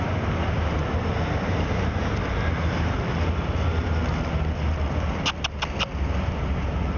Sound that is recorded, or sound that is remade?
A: recorded